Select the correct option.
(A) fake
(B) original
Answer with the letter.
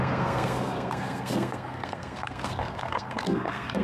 A